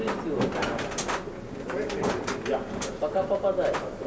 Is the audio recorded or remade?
recorded